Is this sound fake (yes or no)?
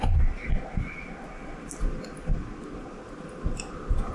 no